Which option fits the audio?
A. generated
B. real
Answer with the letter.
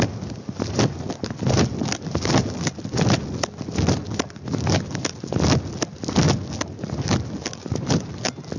B